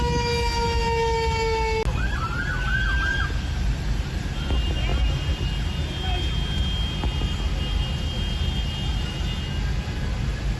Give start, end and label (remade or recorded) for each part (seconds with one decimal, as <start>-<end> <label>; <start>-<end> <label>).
0.0-10.6 recorded